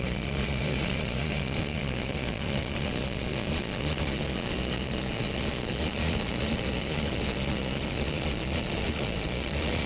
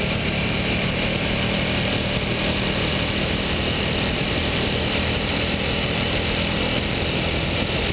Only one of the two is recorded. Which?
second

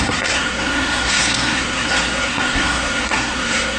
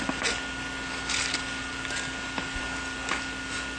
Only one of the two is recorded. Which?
second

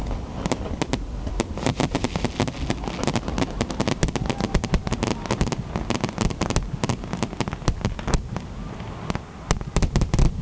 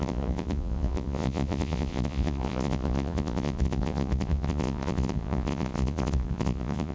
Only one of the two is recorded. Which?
first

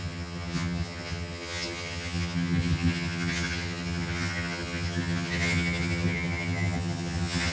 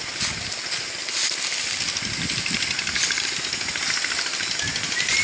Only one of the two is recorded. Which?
second